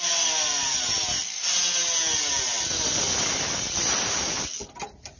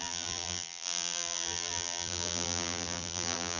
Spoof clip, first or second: second